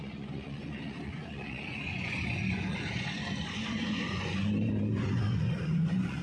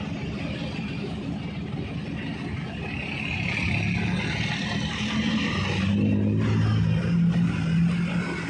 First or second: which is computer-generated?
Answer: first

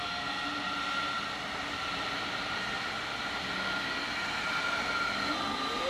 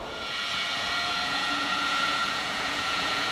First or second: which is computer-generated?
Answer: second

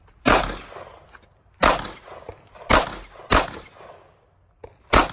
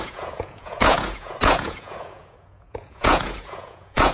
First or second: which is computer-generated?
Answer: second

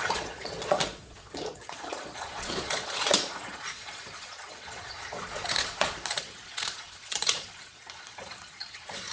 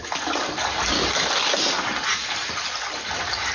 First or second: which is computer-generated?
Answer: first